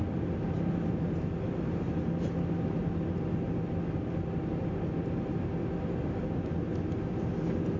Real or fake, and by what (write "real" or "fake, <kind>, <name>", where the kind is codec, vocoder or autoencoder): real